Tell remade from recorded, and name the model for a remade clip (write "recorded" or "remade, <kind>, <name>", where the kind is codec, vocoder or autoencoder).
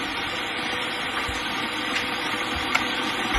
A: remade, vocoder, BigVGAN v2